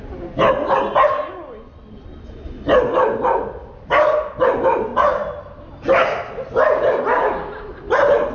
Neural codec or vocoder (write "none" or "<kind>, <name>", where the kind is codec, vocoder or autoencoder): none